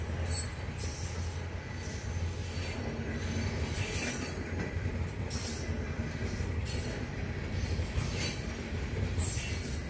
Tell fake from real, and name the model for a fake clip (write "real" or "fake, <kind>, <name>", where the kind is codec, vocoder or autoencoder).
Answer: real